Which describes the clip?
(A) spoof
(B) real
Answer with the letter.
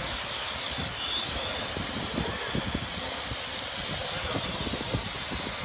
B